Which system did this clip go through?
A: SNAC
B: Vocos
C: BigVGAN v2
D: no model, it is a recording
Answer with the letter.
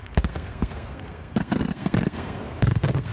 A